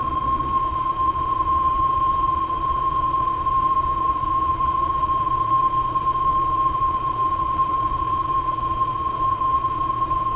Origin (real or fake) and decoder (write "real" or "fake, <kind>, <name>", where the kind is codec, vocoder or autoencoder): fake, vocoder, Vocos